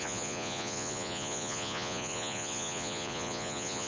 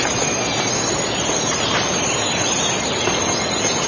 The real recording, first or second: second